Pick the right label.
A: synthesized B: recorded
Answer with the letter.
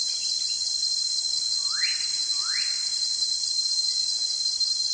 B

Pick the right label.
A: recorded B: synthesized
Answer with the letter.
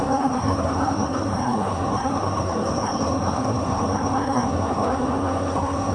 B